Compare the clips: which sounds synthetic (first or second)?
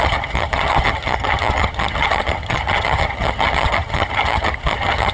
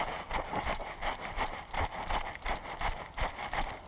first